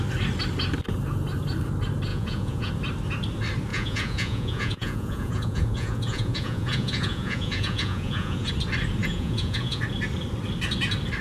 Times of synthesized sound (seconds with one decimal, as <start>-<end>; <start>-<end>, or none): 2.1-2.7; 3.7-8.5; 9.0-9.8